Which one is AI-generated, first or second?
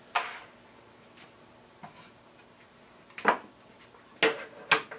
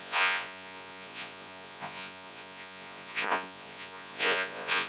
second